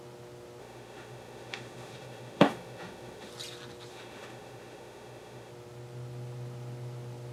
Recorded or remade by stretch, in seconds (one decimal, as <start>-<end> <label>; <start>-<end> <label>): 0.0-0.6 recorded; 0.6-3.3 remade; 3.3-3.9 recorded; 3.9-5.5 remade; 5.5-7.3 recorded